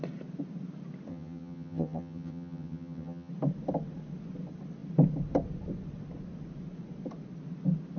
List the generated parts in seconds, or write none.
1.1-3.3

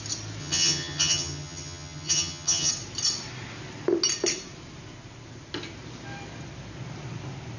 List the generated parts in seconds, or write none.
0.4-2.7

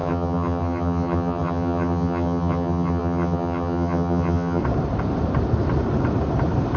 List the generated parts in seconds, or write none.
0.0-4.6

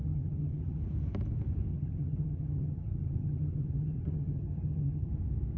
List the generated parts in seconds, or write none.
0.0-0.8; 1.7-5.1

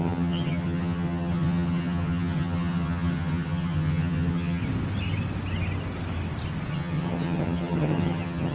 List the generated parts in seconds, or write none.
0.0-4.6; 6.7-8.5